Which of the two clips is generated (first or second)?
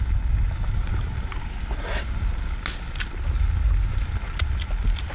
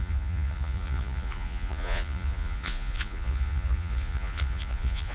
second